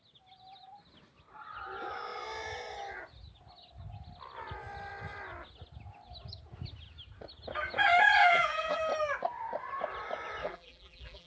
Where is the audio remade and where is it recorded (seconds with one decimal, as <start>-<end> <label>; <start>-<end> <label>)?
0.0-8.2 recorded; 8.2-8.8 remade; 8.8-10.4 recorded; 10.4-11.3 remade